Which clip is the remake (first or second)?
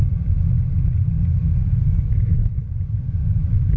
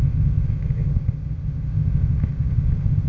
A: second